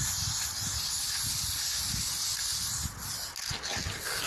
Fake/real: real